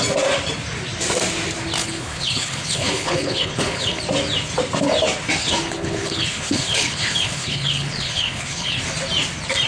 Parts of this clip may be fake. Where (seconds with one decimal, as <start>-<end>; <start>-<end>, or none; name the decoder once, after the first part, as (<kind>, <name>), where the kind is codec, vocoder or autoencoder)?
1.8-4.0 (codec, HILCodec); 5.4-8.8